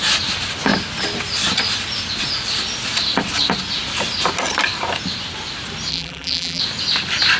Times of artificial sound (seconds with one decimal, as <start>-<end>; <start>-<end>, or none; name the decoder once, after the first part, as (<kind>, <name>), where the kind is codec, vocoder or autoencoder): 5.9-6.6 (vocoder, BigVGAN v2)